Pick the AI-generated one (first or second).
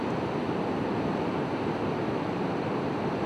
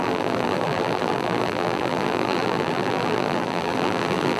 second